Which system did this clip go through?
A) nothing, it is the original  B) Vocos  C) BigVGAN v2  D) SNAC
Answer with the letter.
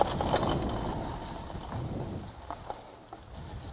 A